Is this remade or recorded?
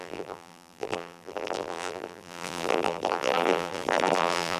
remade